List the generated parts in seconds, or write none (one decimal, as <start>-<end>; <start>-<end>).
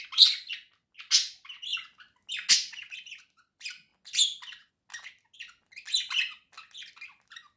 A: none